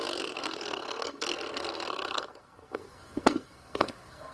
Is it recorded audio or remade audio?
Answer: remade